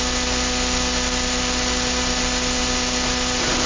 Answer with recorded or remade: recorded